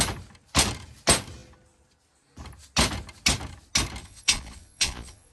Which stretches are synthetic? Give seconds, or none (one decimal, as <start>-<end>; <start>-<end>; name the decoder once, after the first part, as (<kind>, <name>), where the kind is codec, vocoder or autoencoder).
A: 4.0-5.3 (vocoder, Vocos)